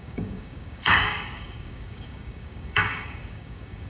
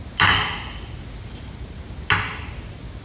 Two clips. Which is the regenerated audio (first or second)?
first